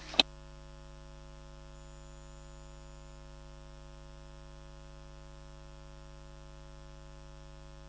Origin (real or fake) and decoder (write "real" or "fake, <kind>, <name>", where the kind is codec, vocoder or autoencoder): real